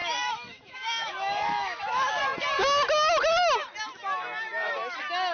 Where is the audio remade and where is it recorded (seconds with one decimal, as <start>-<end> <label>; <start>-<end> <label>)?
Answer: 0.0-2.2 remade; 2.2-5.3 recorded